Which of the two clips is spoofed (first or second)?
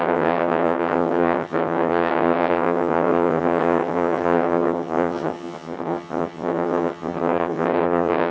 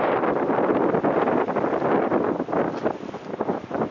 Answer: first